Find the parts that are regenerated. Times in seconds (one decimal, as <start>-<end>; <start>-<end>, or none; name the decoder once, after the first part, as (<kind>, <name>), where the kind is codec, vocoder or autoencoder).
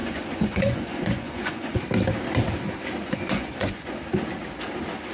0.0-1.8 (vocoder, Vocos); 3.0-4.0